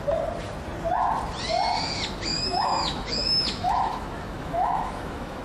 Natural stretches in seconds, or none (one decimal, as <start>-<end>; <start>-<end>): 0.0-2.3